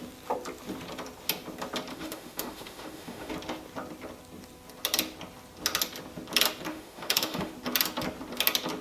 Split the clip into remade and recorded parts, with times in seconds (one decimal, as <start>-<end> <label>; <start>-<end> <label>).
0.0-1.9 recorded; 1.9-3.3 remade; 3.3-6.7 recorded; 6.7-7.5 remade; 7.5-8.8 recorded